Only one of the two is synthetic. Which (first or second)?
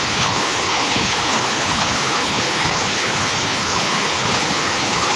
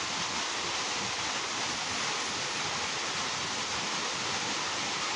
first